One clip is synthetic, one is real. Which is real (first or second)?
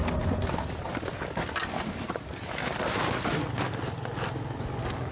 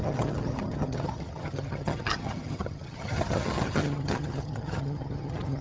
first